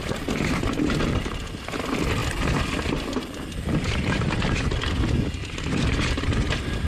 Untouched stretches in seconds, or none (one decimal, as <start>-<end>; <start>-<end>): 0.0-6.9